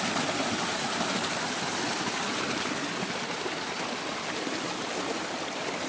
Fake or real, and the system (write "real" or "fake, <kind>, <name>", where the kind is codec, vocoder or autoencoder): real